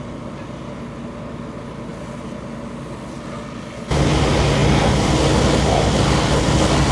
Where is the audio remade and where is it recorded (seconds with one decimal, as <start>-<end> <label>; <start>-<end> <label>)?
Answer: 0.0-6.9 recorded